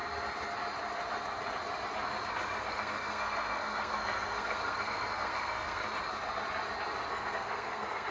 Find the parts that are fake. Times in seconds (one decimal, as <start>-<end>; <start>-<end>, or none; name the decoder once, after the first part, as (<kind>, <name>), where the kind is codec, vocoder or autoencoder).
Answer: 2.6-5.8 (codec, SNAC); 7.1-8.1